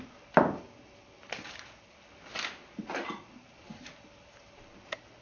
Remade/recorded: recorded